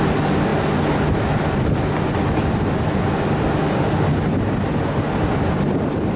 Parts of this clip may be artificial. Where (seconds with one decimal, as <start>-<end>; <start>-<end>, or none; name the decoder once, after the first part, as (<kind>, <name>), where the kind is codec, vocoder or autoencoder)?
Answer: none